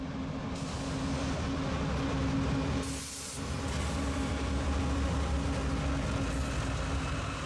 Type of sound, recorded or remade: recorded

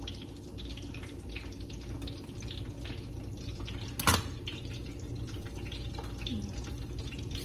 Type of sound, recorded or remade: recorded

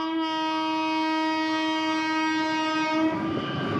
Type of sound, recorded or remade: recorded